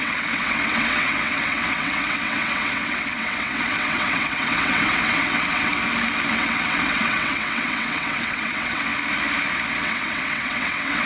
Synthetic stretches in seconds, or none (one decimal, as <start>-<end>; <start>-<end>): 0.0-5.7; 6.3-8.9; 9.8-11.1